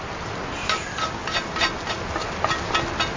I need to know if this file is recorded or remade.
recorded